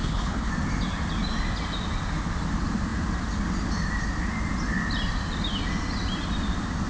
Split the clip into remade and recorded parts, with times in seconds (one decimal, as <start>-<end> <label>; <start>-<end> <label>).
0.0-0.5 remade; 0.5-6.9 recorded

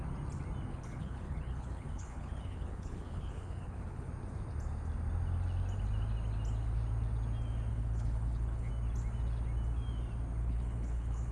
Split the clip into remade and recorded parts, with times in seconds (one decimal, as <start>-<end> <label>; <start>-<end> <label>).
0.0-0.7 recorded; 0.7-4.1 remade; 4.1-7.7 recorded; 7.7-8.7 remade; 8.7-10.4 recorded; 10.4-11.3 remade

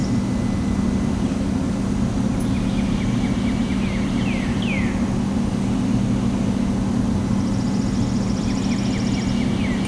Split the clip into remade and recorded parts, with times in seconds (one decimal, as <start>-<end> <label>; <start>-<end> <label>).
0.0-9.9 recorded